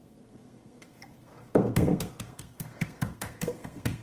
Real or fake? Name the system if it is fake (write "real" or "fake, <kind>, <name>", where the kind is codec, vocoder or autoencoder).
fake, codec, SNAC